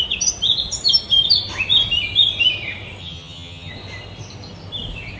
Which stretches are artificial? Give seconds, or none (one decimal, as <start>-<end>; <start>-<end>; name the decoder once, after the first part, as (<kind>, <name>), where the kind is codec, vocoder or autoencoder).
3.0-3.7 (vocoder, HiFi-GAN)